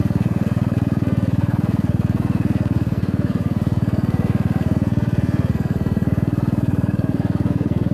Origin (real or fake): fake